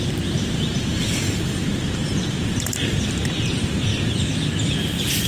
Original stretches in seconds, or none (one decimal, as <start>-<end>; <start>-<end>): 3.9-5.3